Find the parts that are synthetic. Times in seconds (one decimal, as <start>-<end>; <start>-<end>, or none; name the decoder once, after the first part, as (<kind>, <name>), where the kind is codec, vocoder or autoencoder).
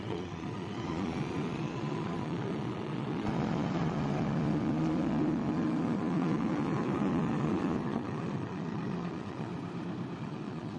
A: 0.0-9.5 (vocoder, Vocos); 10.2-10.8